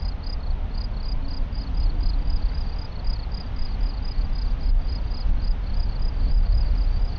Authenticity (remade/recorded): recorded